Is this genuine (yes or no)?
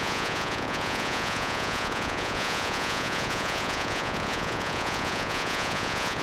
no